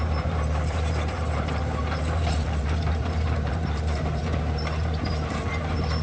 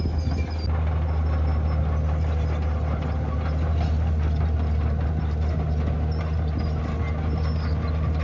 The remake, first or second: first